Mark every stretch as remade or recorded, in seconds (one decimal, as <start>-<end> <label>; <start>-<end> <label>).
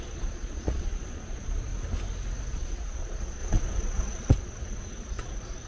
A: 0.0-1.7 remade; 1.7-2.5 recorded; 2.5-5.7 remade